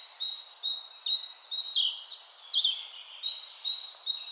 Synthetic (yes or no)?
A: no